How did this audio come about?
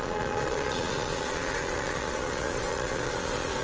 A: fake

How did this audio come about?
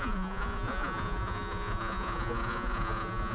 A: fake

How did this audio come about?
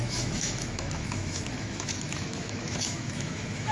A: fake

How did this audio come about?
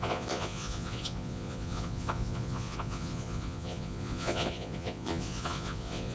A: fake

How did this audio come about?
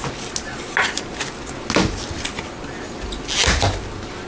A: real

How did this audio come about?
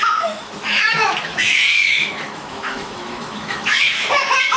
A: fake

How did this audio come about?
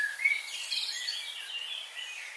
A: fake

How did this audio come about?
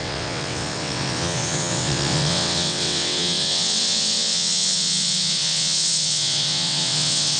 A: fake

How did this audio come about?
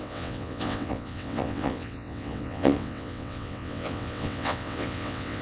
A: fake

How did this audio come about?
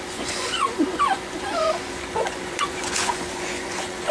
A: fake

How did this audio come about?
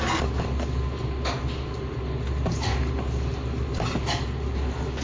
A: real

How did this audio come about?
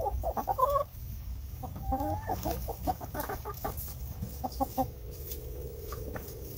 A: fake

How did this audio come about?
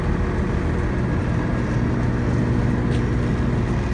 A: real